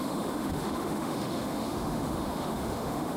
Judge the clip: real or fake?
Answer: fake